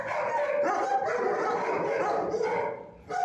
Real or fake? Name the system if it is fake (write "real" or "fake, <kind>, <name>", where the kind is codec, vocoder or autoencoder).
real